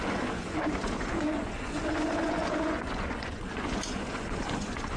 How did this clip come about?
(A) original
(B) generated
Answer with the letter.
B